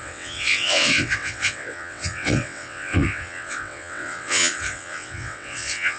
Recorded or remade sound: remade